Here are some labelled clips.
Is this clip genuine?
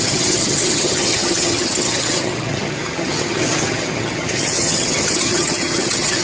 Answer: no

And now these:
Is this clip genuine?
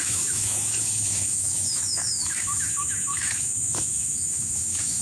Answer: no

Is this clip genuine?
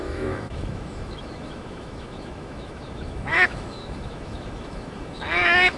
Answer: no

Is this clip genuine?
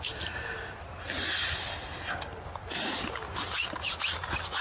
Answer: yes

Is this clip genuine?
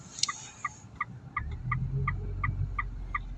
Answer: yes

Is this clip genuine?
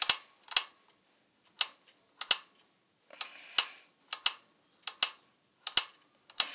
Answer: yes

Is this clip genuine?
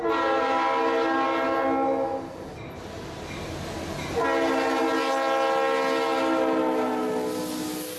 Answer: yes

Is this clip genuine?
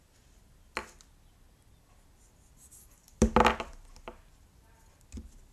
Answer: yes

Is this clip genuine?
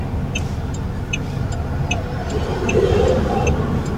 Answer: yes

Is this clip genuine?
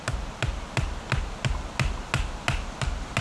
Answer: yes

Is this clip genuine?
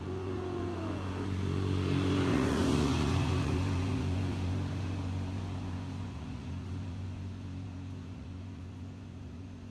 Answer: no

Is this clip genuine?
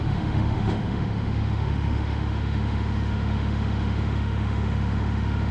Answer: no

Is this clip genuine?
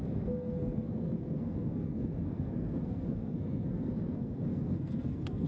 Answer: no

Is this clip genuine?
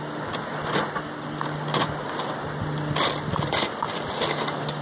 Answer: yes